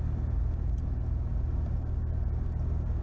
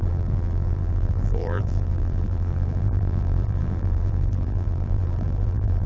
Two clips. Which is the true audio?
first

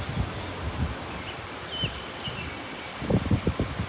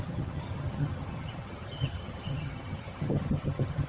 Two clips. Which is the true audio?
first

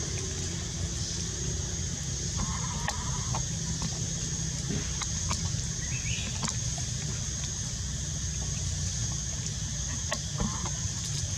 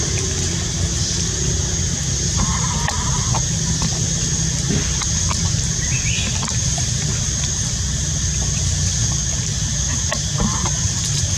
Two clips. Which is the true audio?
first